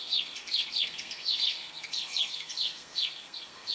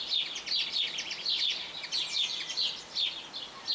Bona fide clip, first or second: second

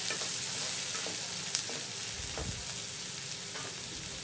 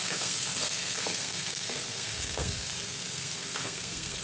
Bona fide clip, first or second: first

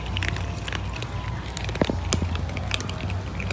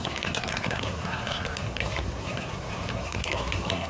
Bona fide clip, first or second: first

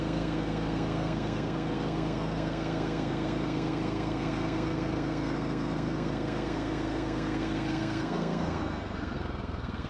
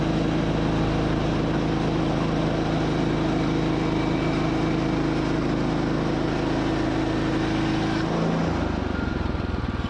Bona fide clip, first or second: second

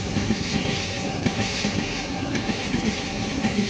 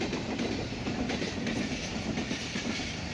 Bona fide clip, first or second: second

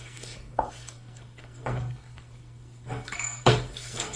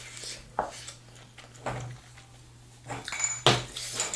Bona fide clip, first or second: second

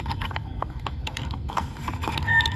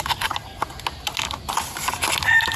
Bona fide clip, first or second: second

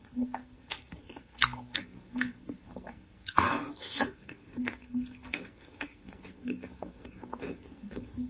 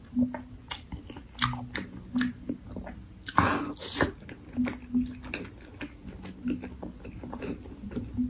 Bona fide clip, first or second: second